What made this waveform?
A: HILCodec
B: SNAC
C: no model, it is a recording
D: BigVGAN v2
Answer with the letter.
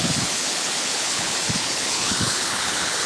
A